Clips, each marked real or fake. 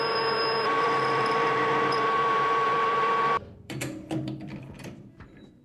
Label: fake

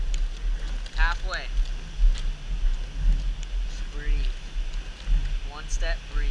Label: real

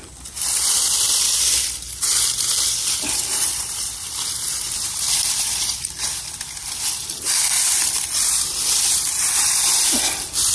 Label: fake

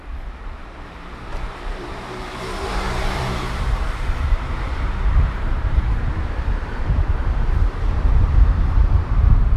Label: fake